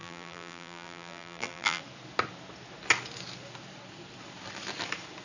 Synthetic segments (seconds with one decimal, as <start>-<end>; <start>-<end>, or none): 0.0-1.8